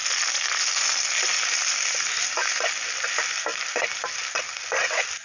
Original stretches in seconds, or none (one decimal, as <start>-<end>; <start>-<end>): 0.0-5.2